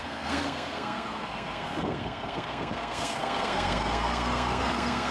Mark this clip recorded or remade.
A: remade